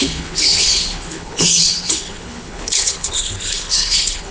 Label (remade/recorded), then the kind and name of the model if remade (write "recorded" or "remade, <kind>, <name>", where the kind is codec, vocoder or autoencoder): remade, codec, HILCodec